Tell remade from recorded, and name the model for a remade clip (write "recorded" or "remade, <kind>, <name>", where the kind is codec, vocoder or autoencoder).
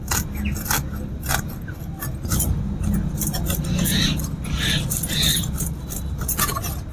recorded